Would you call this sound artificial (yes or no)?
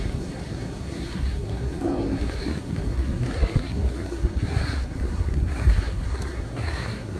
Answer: yes